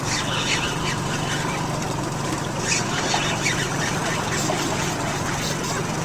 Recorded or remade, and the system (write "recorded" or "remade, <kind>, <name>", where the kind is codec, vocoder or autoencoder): recorded